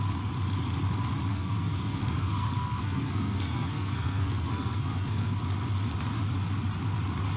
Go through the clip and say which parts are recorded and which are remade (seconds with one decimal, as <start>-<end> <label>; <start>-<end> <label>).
0.0-1.3 recorded; 1.3-5.4 remade; 5.4-7.4 recorded